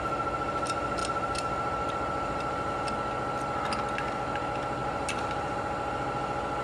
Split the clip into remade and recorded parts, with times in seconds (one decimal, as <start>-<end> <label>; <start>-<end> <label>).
0.0-1.0 recorded; 1.0-2.7 remade; 2.7-4.8 recorded; 4.8-5.5 remade; 5.5-6.6 recorded